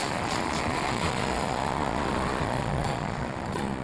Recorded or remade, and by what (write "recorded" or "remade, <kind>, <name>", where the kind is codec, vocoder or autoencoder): remade, vocoder, Vocos